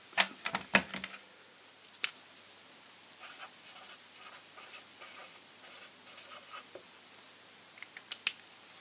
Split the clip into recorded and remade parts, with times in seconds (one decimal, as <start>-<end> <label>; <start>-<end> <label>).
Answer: 0.0-8.8 recorded